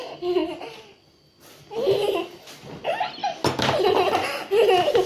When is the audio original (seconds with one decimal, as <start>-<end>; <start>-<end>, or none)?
0.0-5.1

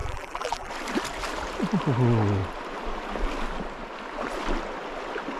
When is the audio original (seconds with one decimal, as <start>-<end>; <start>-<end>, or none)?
0.7-5.4

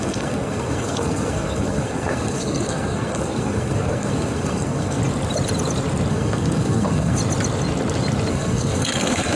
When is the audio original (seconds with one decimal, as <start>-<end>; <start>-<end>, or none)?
5.0-6.1; 7.2-8.3

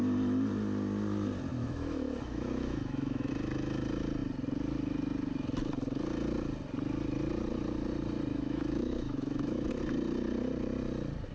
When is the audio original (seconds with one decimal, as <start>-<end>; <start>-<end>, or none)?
0.0-1.5; 3.3-8.3; 9.7-11.3

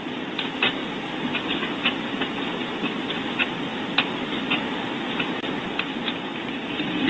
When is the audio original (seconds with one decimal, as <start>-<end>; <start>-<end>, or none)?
0.0-7.1

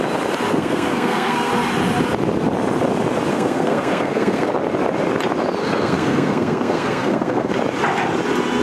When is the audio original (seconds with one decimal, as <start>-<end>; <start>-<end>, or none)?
0.0-0.5; 1.5-3.3; 4.5-5.6; 7.5-8.6

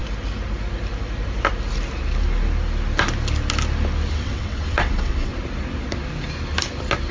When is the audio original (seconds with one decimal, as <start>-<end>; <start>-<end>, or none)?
0.0-4.1; 5.3-7.1

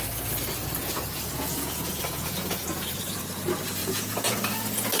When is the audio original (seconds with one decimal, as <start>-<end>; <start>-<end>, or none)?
0.0-0.8; 3.2-3.8; 4.4-5.0